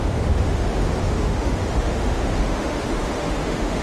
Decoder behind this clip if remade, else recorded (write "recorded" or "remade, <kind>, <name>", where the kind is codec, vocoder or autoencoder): remade, autoencoder, DAC-VAE